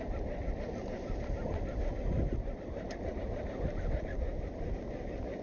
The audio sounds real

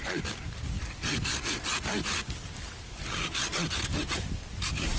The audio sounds real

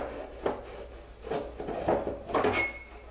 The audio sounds real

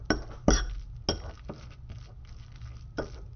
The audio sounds real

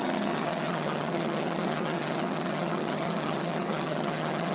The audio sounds fake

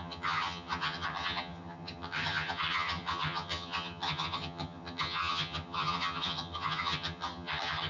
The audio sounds fake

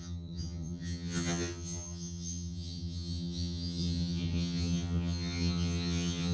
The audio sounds fake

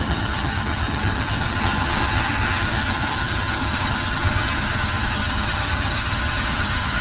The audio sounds fake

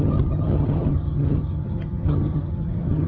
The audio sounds fake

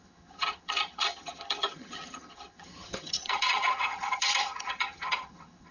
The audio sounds fake